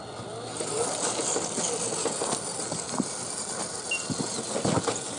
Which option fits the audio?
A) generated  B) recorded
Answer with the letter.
B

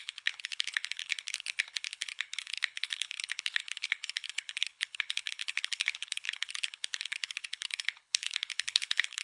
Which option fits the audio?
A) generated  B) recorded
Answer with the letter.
A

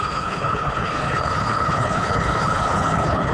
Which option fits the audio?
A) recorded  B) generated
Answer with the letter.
B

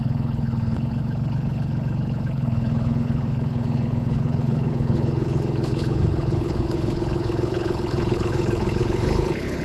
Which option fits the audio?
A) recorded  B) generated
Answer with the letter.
B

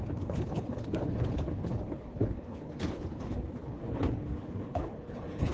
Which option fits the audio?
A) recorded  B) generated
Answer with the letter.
B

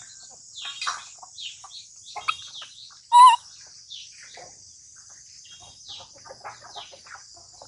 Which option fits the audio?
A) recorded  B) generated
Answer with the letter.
A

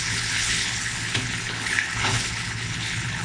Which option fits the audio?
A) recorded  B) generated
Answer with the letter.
B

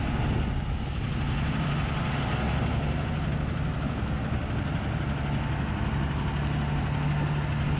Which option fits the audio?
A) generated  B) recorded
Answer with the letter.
B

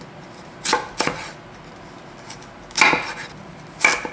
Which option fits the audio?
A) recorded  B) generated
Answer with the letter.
A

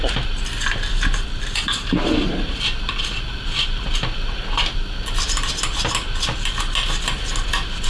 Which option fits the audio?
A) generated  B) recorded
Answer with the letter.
B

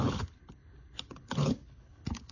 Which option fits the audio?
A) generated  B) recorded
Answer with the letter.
A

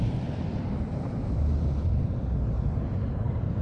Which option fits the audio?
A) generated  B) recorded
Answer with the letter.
B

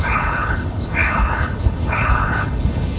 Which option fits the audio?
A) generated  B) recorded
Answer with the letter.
A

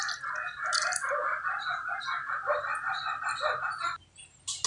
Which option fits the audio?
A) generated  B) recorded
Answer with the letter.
B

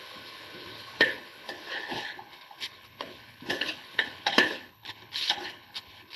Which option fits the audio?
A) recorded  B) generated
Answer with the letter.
B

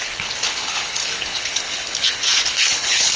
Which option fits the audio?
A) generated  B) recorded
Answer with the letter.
A